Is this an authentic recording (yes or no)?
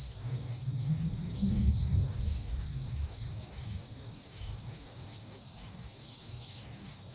no